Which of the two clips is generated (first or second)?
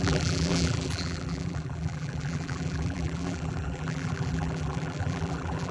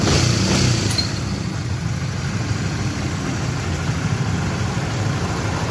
first